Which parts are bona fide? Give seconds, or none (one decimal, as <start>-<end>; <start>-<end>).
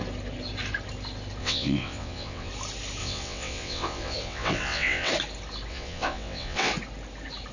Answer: 0.0-1.4; 2.5-3.0; 5.1-5.7; 6.7-7.5